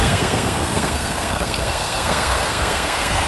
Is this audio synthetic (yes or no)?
yes